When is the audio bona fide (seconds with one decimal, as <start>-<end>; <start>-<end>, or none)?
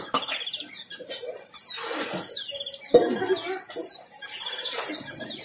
0.0-3.8; 4.9-5.4